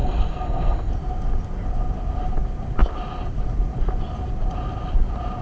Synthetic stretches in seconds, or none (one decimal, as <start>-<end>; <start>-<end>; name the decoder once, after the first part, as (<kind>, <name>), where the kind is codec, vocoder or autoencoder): 0.0-0.9 (codec, SNAC)